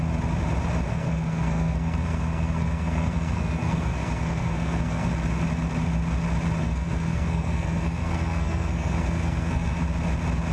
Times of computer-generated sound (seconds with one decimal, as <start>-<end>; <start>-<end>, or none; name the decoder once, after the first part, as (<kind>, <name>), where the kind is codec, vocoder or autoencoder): 0.9-5.1 (codec, SNAC); 6.6-9.8